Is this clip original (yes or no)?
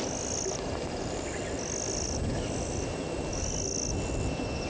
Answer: yes